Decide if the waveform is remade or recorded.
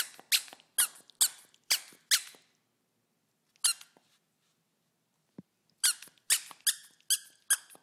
recorded